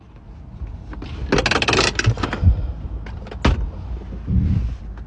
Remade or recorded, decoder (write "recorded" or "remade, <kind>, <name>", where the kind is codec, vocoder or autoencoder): recorded